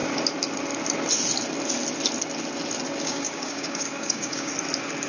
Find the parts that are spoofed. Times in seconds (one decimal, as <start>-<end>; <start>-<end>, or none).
3.0-4.5